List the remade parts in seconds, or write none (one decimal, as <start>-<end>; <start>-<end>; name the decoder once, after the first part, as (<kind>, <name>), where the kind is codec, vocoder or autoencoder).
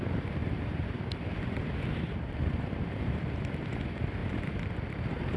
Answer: 0.4-3.6 (vocoder, BigVGAN v2); 4.2-5.4